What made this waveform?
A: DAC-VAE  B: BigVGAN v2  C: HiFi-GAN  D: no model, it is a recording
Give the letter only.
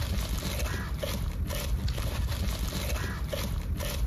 D